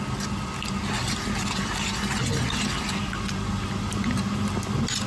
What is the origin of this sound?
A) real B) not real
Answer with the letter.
A